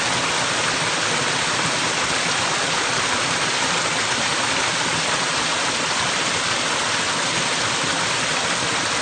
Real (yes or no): yes